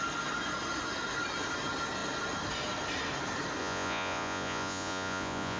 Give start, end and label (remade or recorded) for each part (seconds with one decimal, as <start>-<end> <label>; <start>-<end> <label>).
0.0-3.6 recorded; 3.6-5.6 remade